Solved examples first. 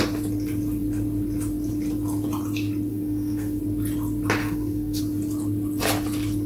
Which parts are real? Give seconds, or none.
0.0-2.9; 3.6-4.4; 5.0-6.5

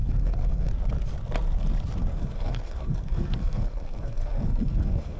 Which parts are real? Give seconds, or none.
0.7-2.1

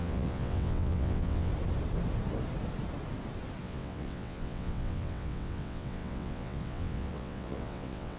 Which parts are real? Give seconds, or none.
1.5-3.6

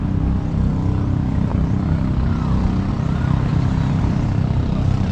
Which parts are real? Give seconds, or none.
none

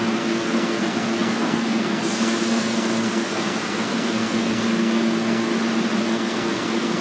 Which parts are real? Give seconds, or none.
5.5-6.0